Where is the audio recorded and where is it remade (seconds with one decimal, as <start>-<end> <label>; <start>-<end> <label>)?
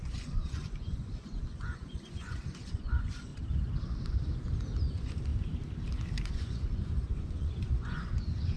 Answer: 0.0-3.3 remade; 3.3-4.8 recorded; 4.8-5.3 remade; 5.3-6.3 recorded; 6.3-8.6 remade